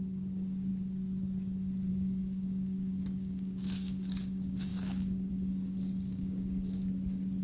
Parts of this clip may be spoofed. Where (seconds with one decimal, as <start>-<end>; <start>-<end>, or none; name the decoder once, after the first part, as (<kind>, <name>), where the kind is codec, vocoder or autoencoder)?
0.0-0.7 (codec, DAC); 1.9-6.8